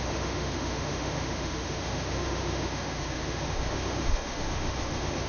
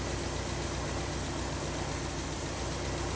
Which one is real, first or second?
second